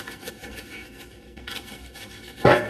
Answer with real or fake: fake